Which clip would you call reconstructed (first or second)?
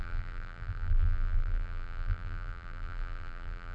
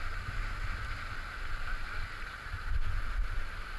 first